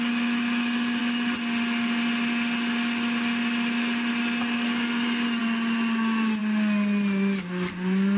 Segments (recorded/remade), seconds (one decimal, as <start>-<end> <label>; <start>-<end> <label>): 0.0-8.2 recorded